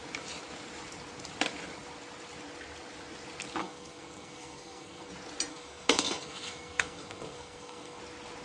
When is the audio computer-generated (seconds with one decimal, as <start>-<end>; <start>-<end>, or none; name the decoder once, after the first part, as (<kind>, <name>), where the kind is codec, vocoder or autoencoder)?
3.6-5.1 (codec, SNAC); 5.5-8.0